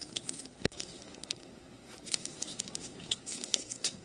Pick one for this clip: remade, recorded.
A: remade